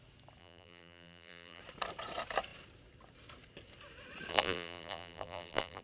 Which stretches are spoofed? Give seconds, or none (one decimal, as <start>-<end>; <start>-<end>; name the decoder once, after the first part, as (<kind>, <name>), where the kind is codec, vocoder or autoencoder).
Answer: 0.4-1.6 (vocoder, BigVGAN v2); 4.3-5.8